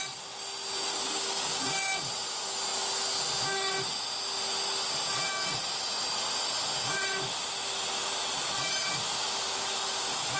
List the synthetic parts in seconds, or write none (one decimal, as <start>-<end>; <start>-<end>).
0.9-1.6